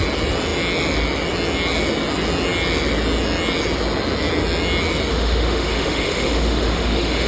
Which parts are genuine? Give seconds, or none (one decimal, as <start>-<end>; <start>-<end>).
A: 0.0-5.1